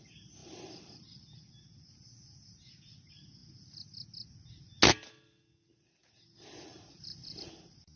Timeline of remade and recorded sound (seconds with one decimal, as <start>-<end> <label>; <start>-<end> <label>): 0.0-0.4 recorded; 0.4-1.4 remade; 1.4-8.0 recorded